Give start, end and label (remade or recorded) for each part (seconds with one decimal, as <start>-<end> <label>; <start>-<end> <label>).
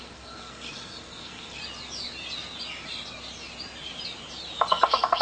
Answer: 0.0-1.6 remade; 1.6-4.7 recorded; 4.7-5.2 remade